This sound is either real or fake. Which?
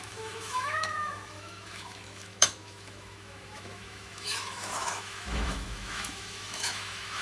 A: fake